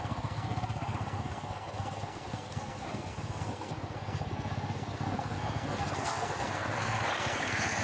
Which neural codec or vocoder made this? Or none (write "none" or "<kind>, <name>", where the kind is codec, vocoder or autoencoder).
codec, SNAC